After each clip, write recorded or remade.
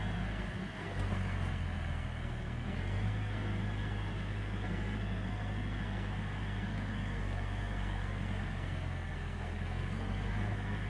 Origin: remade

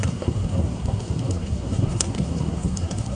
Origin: remade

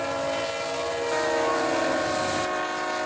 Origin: recorded